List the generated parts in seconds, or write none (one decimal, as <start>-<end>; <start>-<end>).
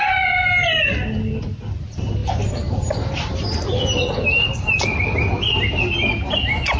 none